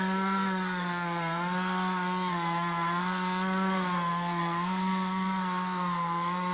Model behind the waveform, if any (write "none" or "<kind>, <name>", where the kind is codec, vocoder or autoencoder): codec, SNAC